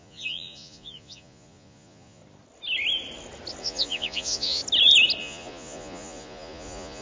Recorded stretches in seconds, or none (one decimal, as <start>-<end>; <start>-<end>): 2.2-3.6; 4.6-5.2